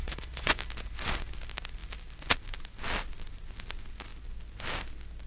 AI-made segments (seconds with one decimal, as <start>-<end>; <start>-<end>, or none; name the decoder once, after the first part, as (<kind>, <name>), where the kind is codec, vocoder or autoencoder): 0.0-0.6 (vocoder, Vocos)